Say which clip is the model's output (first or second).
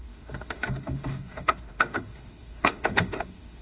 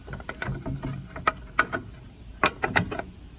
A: first